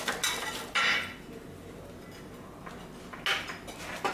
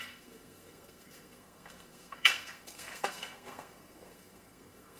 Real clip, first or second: first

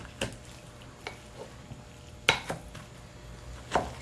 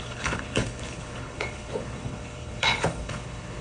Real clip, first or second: first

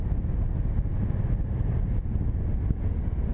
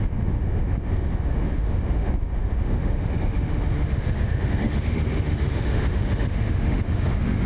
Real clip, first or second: first